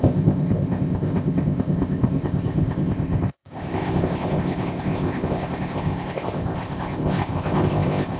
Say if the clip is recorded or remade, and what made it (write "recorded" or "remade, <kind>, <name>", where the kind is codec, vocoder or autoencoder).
remade, codec, ZipCodec